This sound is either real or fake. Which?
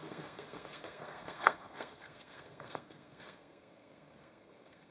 fake